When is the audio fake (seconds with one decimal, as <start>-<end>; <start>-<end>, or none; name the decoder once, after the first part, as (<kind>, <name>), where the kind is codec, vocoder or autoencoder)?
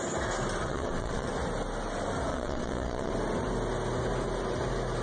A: 0.6-1.3 (vocoder, WaveNeXt); 2.3-3.1